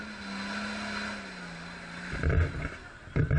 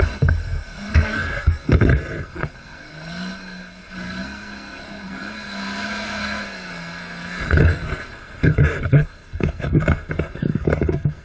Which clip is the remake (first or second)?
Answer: second